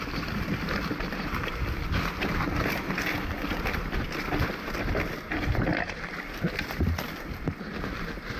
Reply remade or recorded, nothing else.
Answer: recorded